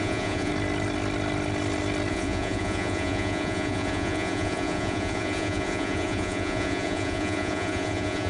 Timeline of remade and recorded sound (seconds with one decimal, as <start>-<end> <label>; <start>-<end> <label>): 0.0-0.5 remade; 0.5-2.1 recorded; 2.1-8.3 remade